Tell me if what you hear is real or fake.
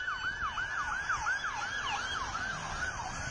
real